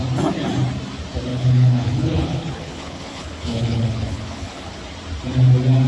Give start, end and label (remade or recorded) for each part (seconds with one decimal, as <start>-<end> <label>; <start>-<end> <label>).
0.0-1.3 recorded; 1.3-4.8 remade; 4.8-5.9 recorded